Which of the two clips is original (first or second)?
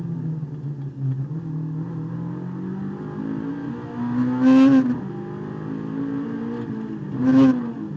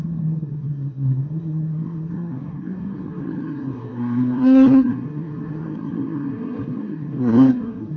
first